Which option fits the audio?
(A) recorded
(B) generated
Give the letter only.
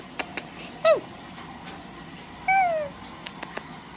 A